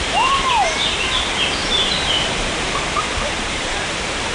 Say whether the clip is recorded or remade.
remade